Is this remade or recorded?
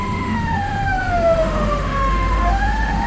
remade